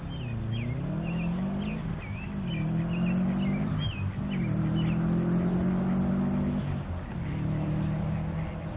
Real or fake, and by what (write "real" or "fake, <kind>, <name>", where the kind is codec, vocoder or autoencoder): real